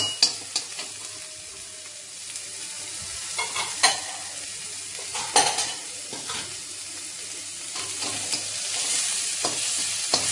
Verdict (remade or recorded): recorded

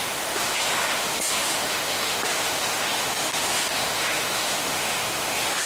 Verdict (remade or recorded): remade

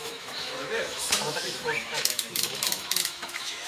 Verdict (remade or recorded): remade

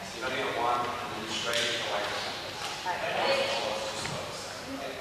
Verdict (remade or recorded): recorded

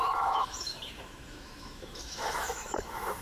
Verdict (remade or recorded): remade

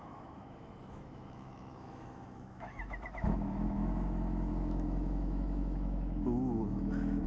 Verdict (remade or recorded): remade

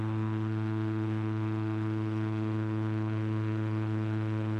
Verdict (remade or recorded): remade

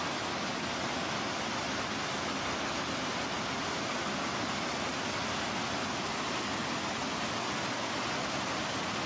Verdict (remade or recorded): recorded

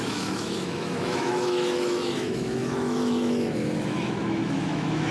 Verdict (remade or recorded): remade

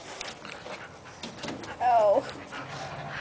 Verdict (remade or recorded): recorded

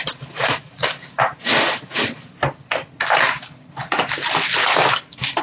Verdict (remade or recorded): recorded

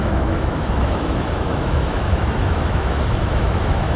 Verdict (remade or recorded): remade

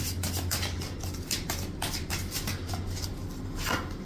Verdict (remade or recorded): recorded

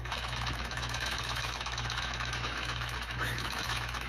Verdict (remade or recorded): remade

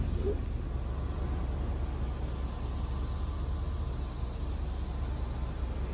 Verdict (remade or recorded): recorded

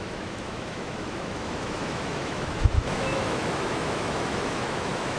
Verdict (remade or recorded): remade